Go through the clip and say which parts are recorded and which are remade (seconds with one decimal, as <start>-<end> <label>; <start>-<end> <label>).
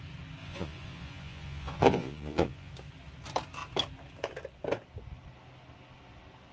0.0-0.4 recorded; 0.4-2.7 remade; 2.7-6.5 recorded